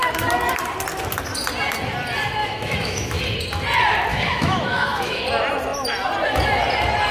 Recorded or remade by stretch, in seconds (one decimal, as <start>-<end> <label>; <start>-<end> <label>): 0.0-2.4 recorded; 2.4-3.2 remade; 3.2-4.1 recorded; 4.1-5.2 remade; 5.2-7.1 recorded